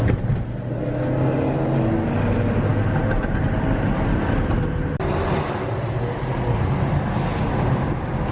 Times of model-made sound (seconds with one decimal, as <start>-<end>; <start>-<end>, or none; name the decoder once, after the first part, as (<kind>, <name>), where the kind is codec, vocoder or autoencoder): none